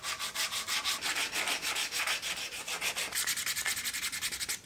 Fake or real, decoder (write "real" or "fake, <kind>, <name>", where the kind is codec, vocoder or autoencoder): real